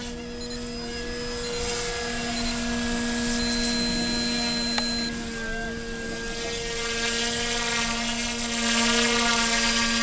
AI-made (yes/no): no